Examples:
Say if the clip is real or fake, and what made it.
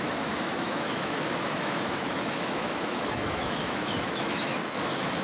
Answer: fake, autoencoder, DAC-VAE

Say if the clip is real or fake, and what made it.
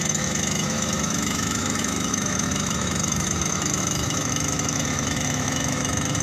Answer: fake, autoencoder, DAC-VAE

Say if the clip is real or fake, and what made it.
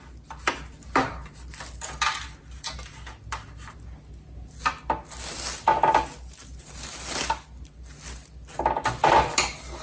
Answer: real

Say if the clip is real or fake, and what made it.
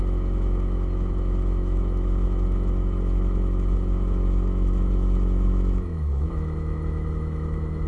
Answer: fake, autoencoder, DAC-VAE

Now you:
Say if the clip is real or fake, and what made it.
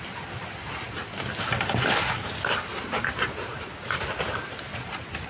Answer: real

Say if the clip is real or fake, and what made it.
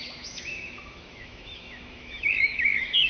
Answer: fake, autoencoder, DAC-VAE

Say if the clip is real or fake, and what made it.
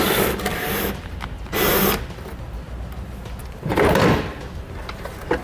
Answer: real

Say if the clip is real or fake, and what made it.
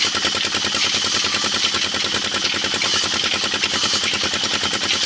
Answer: real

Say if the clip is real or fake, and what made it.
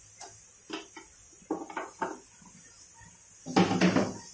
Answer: real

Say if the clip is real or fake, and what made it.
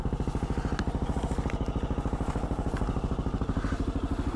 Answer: real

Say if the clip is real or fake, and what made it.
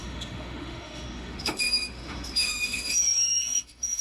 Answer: fake, autoencoder, DAC-VAE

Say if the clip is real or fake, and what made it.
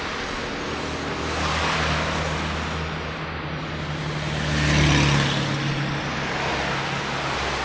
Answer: real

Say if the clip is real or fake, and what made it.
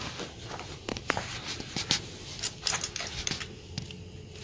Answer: real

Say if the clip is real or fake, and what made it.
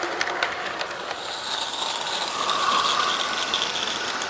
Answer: real